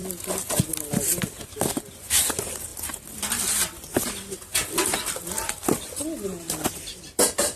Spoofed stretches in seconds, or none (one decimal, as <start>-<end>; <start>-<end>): none